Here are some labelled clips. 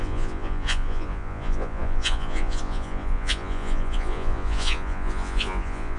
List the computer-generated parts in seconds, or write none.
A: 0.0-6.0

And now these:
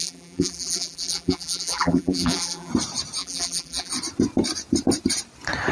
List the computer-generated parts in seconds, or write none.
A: 0.0-2.7; 3.2-3.9

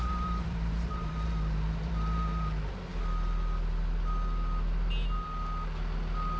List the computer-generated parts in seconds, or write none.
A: 0.0-2.9

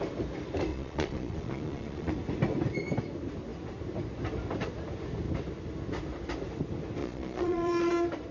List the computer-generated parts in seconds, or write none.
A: 0.7-2.1; 7.0-7.9